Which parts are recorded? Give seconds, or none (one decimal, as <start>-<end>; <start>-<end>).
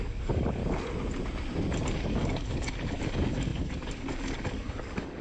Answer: 0.6-1.9